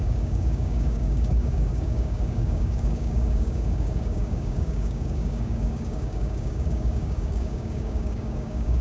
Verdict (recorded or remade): remade